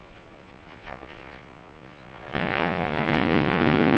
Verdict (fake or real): fake